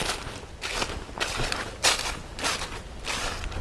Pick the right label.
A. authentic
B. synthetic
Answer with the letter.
A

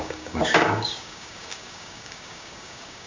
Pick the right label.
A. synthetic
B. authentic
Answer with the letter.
A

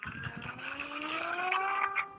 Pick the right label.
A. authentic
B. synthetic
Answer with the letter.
B